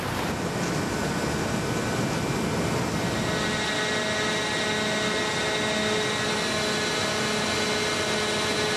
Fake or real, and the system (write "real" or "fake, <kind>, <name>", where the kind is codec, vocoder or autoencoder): real